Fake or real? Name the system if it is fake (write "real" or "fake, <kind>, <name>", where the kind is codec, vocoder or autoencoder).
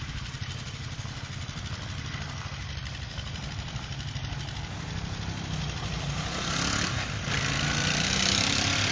fake, vocoder, BigVGAN v2